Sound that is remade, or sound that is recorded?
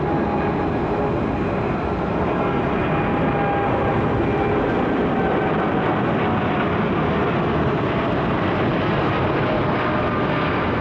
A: recorded